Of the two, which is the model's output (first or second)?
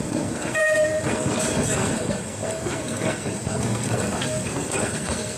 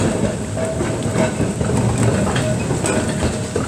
first